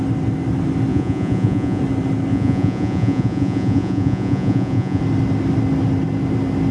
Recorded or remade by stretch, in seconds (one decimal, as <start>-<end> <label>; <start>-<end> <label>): 0.0-0.9 recorded; 0.9-1.8 remade; 1.8-2.3 recorded; 2.3-5.0 remade; 5.0-6.7 recorded

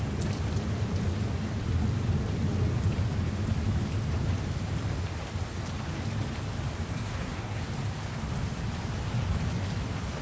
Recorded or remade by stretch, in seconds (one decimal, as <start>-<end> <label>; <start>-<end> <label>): 0.0-6.9 recorded; 6.9-7.6 remade; 7.6-10.2 recorded

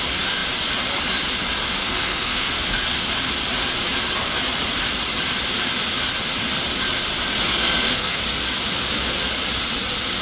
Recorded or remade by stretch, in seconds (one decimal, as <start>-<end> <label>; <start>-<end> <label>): 0.0-1.8 recorded; 1.8-2.5 remade; 2.5-7.5 recorded; 7.5-8.2 remade; 8.2-10.2 recorded

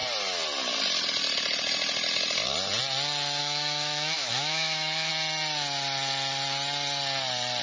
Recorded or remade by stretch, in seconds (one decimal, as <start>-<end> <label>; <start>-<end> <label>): 0.0-3.4 recorded; 3.4-5.1 remade; 5.1-7.6 recorded

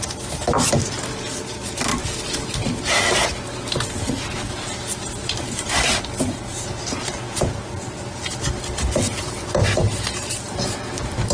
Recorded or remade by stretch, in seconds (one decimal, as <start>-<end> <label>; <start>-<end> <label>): 0.0-4.9 recorded; 4.9-6.4 remade; 6.4-10.5 recorded; 10.5-11.3 remade

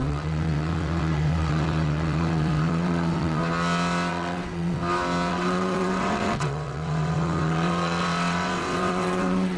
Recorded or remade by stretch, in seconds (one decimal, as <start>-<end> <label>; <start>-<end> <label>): 0.0-3.4 remade; 3.4-4.1 recorded; 4.1-4.8 remade; 4.8-5.3 recorded; 5.3-9.6 remade